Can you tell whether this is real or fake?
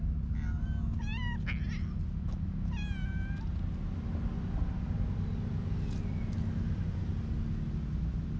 real